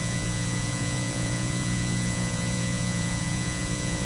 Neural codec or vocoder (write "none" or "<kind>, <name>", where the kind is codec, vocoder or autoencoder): vocoder, Vocos